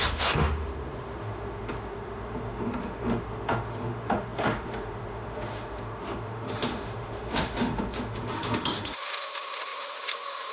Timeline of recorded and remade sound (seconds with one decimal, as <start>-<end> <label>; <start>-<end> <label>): 0.0-10.5 remade